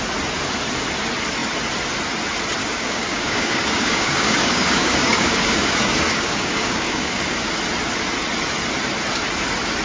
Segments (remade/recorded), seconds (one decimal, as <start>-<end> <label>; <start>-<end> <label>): 0.0-2.6 recorded; 2.6-7.5 remade; 7.5-9.8 recorded